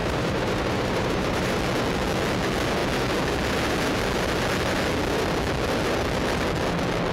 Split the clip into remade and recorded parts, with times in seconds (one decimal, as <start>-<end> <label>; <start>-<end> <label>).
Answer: 0.0-1.6 remade; 1.6-7.1 recorded